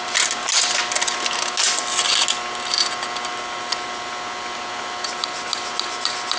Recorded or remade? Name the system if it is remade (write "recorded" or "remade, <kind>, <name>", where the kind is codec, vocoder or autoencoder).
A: recorded